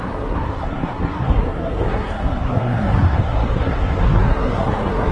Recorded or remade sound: remade